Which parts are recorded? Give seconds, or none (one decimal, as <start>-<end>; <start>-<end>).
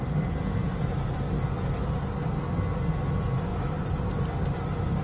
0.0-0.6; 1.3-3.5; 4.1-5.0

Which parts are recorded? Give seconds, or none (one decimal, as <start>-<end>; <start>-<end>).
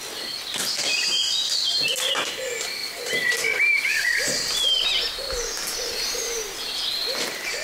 0.0-7.6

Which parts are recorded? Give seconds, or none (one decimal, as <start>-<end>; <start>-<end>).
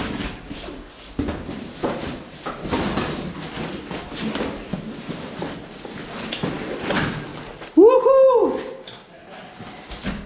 0.0-1.5; 2.3-10.3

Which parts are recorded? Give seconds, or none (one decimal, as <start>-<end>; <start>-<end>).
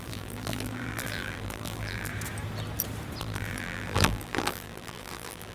2.1-3.2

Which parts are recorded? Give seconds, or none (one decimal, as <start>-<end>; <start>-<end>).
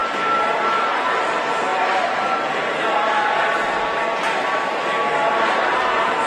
1.7-5.5